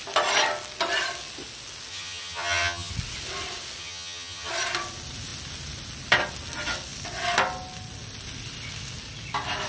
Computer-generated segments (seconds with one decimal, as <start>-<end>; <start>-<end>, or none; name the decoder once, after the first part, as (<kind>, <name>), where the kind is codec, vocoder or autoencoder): 1.9-2.9 (vocoder, HiFi-GAN); 3.8-4.5